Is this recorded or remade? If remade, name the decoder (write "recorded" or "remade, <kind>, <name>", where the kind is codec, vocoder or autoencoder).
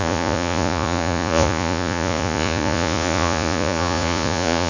remade, vocoder, Vocos